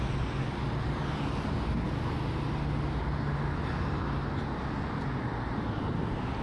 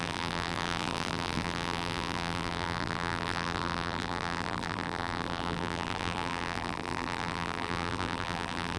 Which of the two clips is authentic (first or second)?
first